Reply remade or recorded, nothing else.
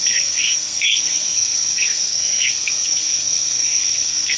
remade